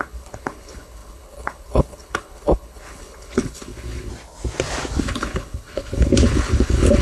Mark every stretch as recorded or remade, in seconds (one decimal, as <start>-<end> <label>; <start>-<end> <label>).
0.0-4.1 remade; 4.1-5.0 recorded; 5.0-7.0 remade